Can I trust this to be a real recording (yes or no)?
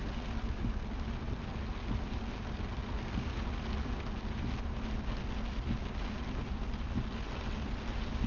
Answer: yes